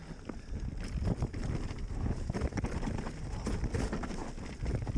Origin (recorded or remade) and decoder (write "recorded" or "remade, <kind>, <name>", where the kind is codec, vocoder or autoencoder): recorded